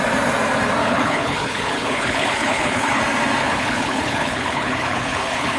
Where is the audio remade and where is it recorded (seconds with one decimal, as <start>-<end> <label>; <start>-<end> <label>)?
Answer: 0.0-0.8 recorded; 0.8-3.0 remade; 3.0-3.4 recorded; 3.4-5.6 remade

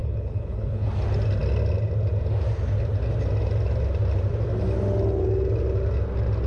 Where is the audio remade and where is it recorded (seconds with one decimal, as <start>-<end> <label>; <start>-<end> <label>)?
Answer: 0.0-0.9 remade; 0.9-6.5 recorded

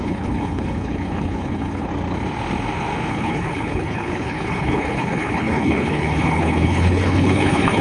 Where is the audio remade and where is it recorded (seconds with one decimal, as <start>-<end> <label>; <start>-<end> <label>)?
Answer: 0.0-1.9 remade; 1.9-3.1 recorded; 3.1-7.8 remade

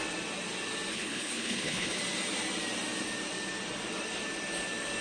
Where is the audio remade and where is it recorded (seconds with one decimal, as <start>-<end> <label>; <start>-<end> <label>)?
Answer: 0.0-0.9 recorded; 0.9-2.0 remade; 2.0-5.0 recorded